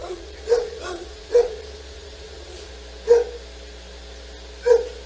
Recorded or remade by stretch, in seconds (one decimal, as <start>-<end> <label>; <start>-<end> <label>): 0.0-2.7 remade; 2.7-5.1 recorded